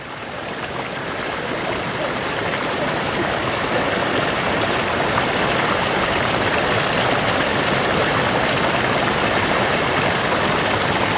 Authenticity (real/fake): real